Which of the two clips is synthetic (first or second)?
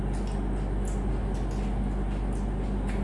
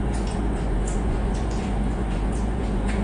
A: second